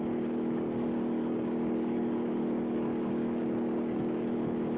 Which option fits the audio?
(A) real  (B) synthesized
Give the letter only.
B